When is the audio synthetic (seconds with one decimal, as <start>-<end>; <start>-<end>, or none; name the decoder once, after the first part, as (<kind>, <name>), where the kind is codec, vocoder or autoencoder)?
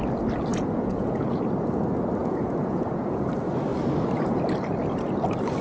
0.5-1.4 (vocoder, Vocos); 2.2-3.3